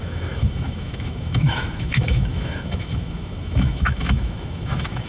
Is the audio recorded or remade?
remade